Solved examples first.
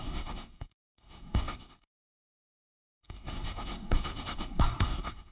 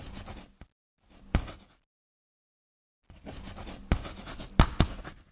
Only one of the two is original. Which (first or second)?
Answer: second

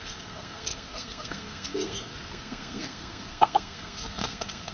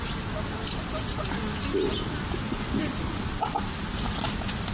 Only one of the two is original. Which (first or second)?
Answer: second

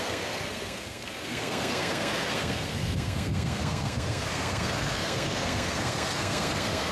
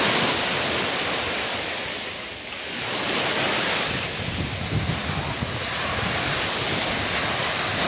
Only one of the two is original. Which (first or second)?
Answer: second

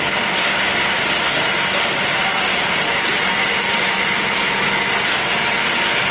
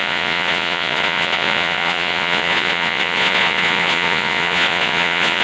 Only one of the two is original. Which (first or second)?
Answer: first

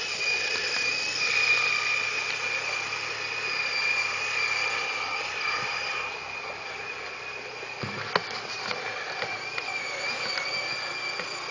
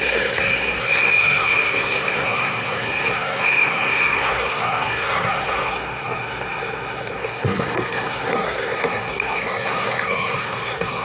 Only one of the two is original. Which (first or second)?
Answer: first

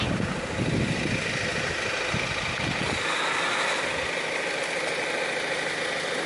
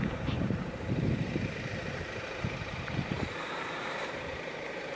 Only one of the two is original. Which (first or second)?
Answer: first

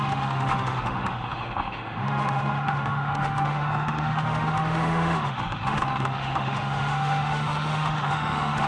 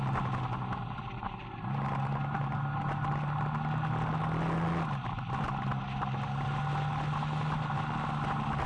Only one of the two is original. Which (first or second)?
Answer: second